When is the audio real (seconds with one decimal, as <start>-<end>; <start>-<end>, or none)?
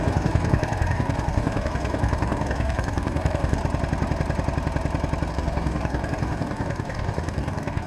3.6-5.3